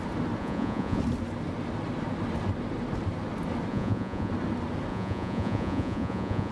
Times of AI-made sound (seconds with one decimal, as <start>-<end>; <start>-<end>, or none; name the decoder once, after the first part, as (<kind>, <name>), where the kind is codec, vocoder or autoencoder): 0.4-1.0 (vocoder, Vocos); 3.7-4.3; 4.9-6.5